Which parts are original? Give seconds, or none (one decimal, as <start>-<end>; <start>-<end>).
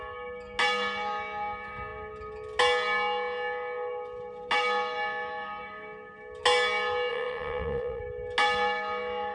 0.0-7.1; 8.0-9.3